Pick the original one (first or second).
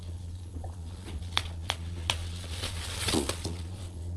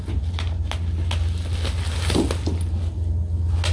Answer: second